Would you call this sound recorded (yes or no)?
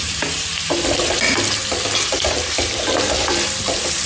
yes